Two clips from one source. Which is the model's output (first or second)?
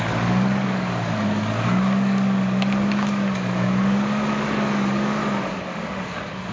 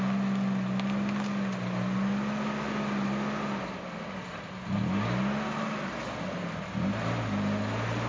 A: first